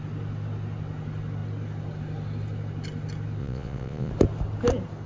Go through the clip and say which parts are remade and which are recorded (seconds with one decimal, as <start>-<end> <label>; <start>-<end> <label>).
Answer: 0.0-3.4 recorded; 3.4-4.1 remade; 4.1-5.1 recorded